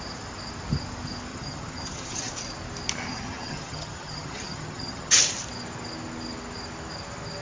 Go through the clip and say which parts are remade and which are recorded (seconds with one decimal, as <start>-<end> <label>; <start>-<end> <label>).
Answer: 0.0-1.3 recorded; 1.3-2.3 remade; 2.3-3.1 recorded; 3.1-5.2 remade; 5.2-7.4 recorded